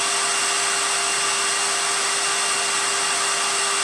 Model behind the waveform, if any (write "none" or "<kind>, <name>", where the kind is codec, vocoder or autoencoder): none